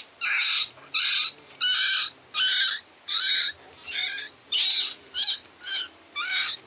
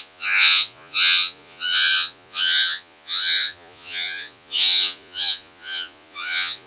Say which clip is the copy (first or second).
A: second